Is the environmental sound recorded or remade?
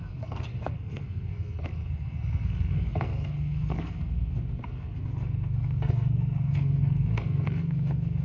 remade